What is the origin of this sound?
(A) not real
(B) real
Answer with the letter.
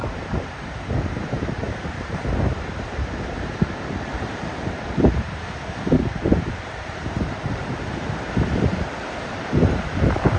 A